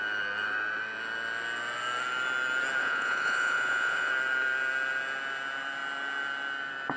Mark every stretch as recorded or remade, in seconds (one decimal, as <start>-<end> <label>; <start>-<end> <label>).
0.0-2.8 recorded; 2.8-4.1 remade; 4.1-7.0 recorded